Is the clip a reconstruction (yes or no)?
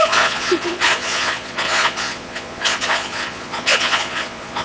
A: yes